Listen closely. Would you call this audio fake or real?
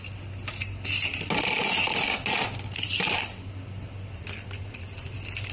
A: real